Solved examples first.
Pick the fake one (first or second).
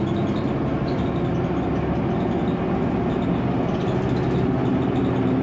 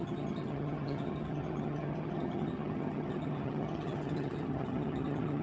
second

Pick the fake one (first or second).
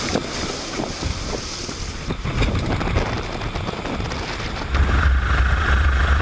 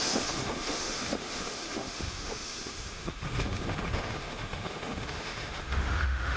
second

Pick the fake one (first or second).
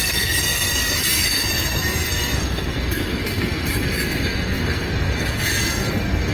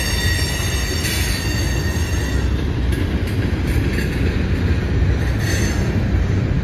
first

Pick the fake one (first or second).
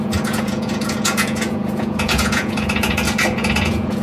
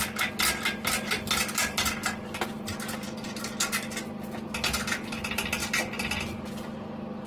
first